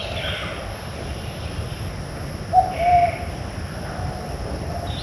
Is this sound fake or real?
fake